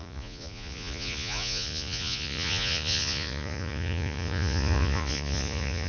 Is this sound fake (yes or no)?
yes